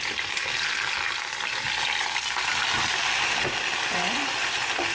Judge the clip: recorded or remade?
recorded